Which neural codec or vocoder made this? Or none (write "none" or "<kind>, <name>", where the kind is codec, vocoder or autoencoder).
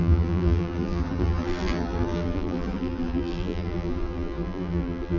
vocoder, BigVGAN v2